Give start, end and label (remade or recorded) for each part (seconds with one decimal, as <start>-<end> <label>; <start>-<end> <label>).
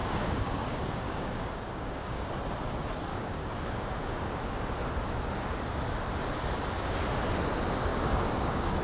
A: 0.0-2.3 remade; 2.3-3.1 recorded; 3.1-4.7 remade; 4.7-7.9 recorded; 7.9-8.8 remade